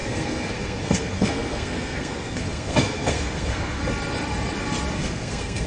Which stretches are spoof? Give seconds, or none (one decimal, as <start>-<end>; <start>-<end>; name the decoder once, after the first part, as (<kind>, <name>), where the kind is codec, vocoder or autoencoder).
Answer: 0.0-3.8 (codec, SNAC); 4.9-5.7